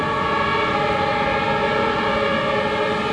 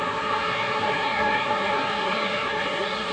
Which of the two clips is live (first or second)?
first